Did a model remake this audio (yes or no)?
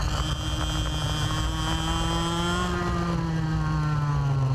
no